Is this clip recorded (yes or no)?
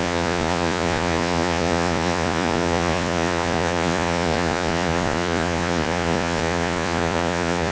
no